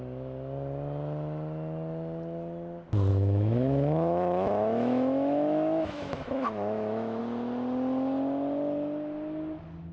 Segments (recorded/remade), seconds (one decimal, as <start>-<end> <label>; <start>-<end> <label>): 0.0-3.1 recorded; 3.1-7.2 remade; 7.2-9.9 recorded

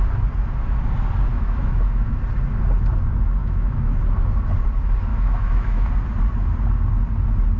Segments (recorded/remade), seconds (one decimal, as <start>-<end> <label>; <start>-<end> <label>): 0.0-1.3 recorded; 1.3-2.2 remade; 2.2-3.4 recorded; 3.4-4.0 remade; 4.0-5.1 recorded; 5.1-5.9 remade; 5.9-7.6 recorded

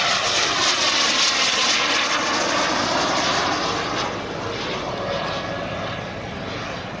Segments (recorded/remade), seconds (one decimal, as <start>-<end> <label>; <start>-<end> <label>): 0.0-7.0 recorded

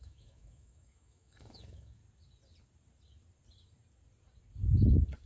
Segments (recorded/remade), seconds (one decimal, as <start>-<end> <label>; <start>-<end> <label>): 0.0-2.0 remade; 2.0-5.3 recorded